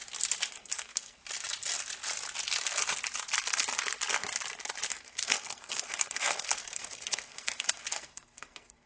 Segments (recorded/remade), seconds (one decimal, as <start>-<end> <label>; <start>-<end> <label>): 0.0-0.5 recorded; 0.5-1.2 remade; 1.2-4.9 recorded; 4.9-8.9 remade

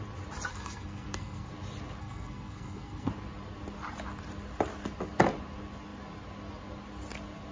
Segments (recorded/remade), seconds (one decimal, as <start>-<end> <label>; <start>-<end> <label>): 0.0-0.5 recorded; 0.5-1.5 remade; 1.5-2.0 recorded; 2.0-3.1 remade; 3.1-7.5 recorded

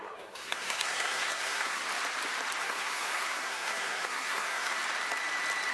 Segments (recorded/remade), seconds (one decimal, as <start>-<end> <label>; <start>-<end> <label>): 0.0-1.8 remade; 1.8-2.6 recorded; 2.6-4.8 remade; 4.8-5.7 recorded

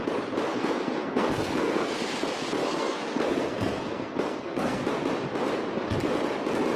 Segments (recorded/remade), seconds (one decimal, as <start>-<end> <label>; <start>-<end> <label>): 0.0-0.5 recorded; 0.5-2.0 remade; 2.0-2.6 recorded; 2.6-4.8 remade; 4.8-6.8 recorded

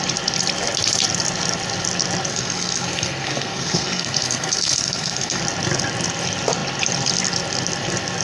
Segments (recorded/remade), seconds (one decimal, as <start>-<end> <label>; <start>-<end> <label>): 0.0-2.3 recorded; 2.3-5.4 remade; 5.4-8.2 recorded